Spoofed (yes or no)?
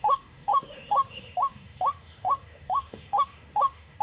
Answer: yes